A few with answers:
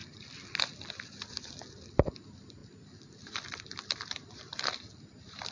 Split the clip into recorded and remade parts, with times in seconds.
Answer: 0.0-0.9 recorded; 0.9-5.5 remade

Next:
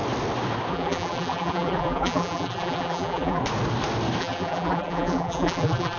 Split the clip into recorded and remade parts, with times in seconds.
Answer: 0.0-0.7 recorded; 0.7-3.4 remade; 3.4-4.2 recorded; 4.2-6.0 remade

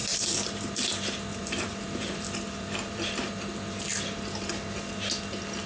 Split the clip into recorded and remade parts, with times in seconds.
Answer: 0.0-0.9 remade; 0.9-1.4 recorded; 1.4-3.8 remade; 3.8-5.7 recorded

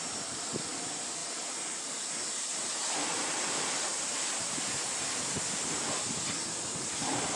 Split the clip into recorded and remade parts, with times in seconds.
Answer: 0.0-1.2 recorded; 1.2-5.4 remade; 5.4-7.4 recorded

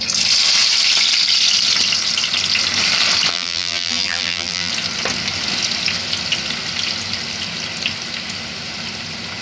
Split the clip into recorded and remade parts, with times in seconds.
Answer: 0.0-3.3 recorded; 3.3-4.7 remade; 4.7-9.4 recorded

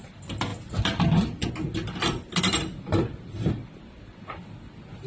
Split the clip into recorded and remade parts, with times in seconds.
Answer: 0.0-0.5 remade; 0.5-2.4 recorded; 2.4-5.1 remade

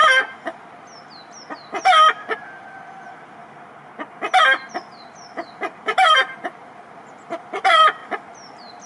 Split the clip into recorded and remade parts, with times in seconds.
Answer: 0.0-4.7 recorded; 4.7-8.9 remade